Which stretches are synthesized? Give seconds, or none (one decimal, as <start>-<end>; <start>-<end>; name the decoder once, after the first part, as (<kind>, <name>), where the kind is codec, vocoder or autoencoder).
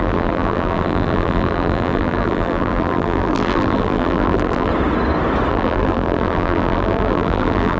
0.0-4.7 (vocoder, BigVGAN v2); 5.5-7.8